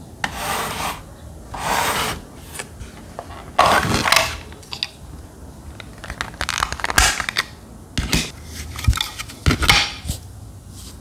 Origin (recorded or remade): recorded